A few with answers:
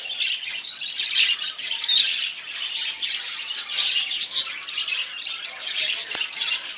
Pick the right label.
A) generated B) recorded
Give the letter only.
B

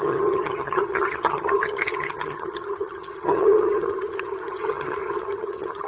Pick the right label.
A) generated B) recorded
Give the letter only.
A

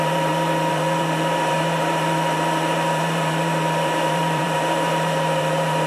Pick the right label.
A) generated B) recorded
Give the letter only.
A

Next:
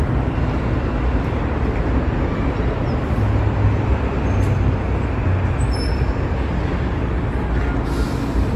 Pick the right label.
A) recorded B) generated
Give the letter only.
A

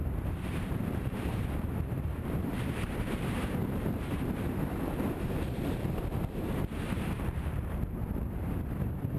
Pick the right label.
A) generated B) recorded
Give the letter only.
A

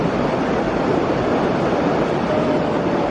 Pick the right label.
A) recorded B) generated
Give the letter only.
A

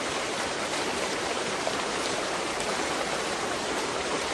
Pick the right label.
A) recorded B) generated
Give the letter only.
B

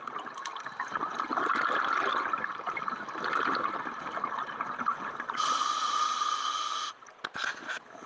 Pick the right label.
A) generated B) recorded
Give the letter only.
B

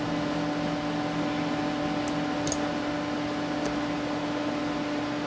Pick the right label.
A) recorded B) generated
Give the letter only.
A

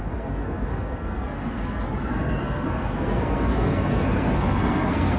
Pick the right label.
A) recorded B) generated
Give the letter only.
B